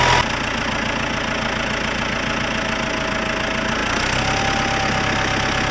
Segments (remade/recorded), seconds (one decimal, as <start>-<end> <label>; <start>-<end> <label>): 0.0-5.7 recorded